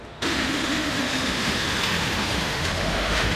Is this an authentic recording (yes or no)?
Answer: no